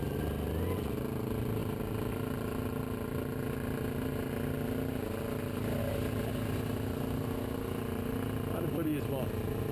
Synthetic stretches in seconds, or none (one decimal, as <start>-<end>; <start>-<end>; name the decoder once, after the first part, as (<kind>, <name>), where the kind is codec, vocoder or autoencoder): none